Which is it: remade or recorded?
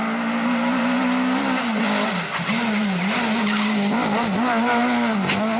recorded